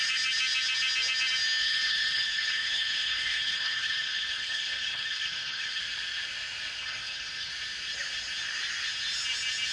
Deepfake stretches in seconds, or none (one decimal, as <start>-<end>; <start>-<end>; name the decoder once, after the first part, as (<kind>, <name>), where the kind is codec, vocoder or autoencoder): 1.6-5.8 (codec, HILCodec); 6.8-7.5

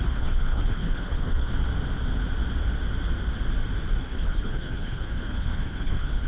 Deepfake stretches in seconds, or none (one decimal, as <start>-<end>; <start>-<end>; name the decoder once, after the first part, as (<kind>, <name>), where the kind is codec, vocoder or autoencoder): 0.0-1.5 (codec, HILCodec); 4.0-6.3

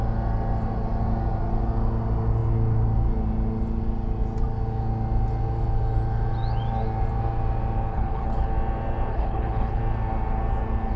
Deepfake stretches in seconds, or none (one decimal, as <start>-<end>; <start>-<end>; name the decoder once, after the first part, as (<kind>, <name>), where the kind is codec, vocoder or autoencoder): 7.9-8.5 (codec, HILCodec); 9.1-9.8

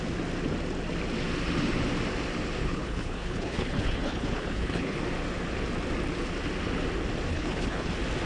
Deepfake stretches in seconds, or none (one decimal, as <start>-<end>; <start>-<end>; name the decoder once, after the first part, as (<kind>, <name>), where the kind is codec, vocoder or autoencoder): 2.6-5.0 (codec, HILCodec); 7.3-7.9

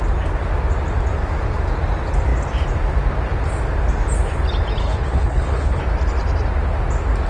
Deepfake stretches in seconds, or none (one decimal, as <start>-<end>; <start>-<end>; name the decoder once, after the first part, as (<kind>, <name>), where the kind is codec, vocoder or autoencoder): 4.8-5.8 (codec, HILCodec)

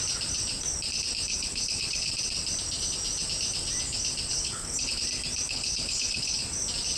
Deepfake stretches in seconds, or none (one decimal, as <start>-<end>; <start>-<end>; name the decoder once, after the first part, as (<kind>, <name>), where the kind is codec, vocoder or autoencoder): 1.3-2.1 (codec, HILCodec); 4.3-5.0; 5.5-6.4

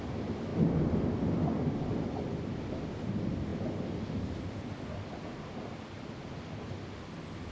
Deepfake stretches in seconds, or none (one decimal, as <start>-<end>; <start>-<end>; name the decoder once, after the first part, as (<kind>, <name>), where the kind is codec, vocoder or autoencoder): none